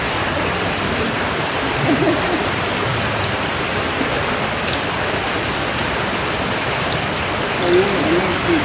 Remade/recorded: remade